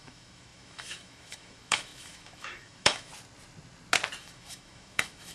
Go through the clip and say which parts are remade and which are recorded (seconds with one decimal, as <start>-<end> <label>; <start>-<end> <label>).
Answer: 0.0-3.1 remade; 3.1-4.2 recorded; 4.2-5.3 remade